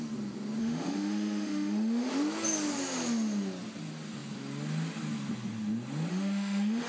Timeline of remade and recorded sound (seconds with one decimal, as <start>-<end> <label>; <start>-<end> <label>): 0.0-0.6 recorded; 0.6-2.1 remade; 2.1-6.1 recorded; 6.1-6.9 remade

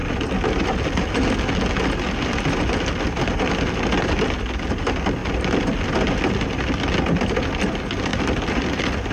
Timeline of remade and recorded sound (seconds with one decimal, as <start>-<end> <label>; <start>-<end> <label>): 0.0-8.1 recorded; 8.1-8.7 remade; 8.7-9.1 recorded

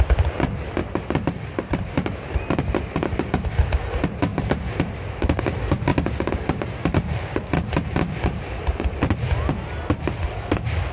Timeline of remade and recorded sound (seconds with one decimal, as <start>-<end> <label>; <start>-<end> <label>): 0.0-4.3 remade; 4.3-5.4 recorded; 5.4-10.9 remade

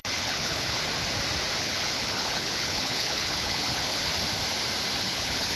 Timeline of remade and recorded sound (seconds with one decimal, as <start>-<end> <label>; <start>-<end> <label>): 0.0-0.8 remade; 0.8-1.6 recorded; 1.6-4.1 remade; 4.1-5.0 recorded; 5.0-5.6 remade

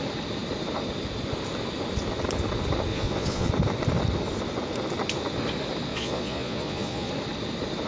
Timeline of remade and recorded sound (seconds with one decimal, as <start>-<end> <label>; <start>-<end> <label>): 0.0-2.9 recorded; 2.9-3.5 remade; 3.5-5.9 recorded; 5.9-7.1 remade; 7.1-7.9 recorded